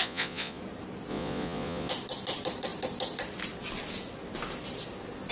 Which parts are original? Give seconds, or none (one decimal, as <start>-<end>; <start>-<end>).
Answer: 0.6-1.1; 1.9-5.3